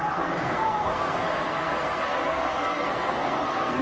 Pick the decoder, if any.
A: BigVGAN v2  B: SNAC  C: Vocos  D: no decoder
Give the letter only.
B